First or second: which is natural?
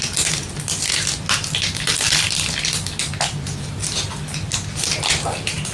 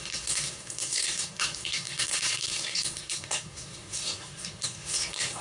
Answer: first